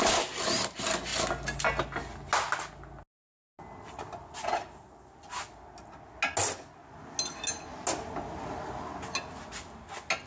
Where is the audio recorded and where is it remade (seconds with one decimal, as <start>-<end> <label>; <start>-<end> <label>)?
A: 0.0-10.3 recorded